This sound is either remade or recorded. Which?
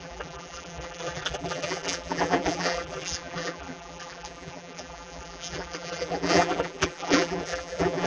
remade